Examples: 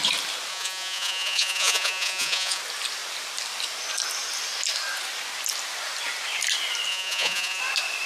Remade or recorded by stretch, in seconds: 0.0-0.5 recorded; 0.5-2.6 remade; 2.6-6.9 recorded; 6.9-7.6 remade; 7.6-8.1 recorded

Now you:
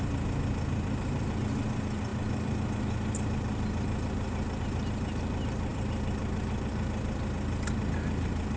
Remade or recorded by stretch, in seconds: 0.0-5.7 recorded; 5.7-6.7 remade; 6.7-8.6 recorded

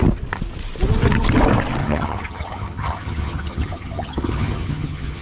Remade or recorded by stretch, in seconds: 0.0-1.8 recorded; 1.8-5.2 remade

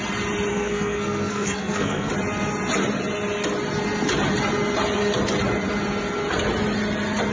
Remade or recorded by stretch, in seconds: 0.0-0.5 recorded; 0.5-2.1 remade; 2.1-7.3 recorded

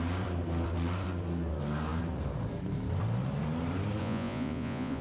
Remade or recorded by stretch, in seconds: 0.0-4.0 recorded; 4.0-5.0 remade

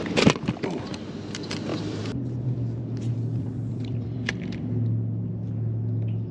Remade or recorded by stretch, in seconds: 0.0-1.7 recorded; 1.7-2.8 remade; 2.8-3.3 recorded; 3.3-4.3 remade; 4.3-6.3 recorded